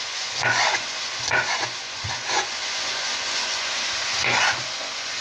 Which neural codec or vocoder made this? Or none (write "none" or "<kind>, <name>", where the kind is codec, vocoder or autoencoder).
vocoder, Vocos